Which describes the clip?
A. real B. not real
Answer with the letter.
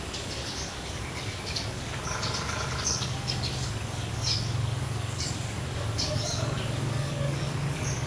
B